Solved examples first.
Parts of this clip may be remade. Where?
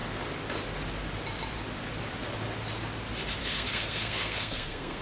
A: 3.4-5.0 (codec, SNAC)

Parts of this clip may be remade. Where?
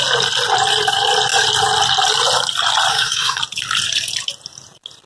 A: 2.9-3.4 (codec, SNAC)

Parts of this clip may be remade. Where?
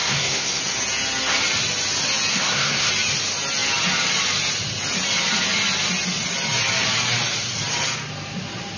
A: 0.0-0.6 (codec, SNAC); 2.3-2.9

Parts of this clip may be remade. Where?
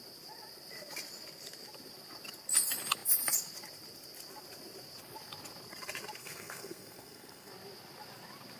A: 6.2-7.5 (codec, SNAC)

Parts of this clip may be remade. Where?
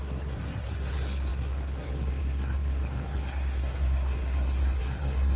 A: 0.0-5.4 (codec, SNAC)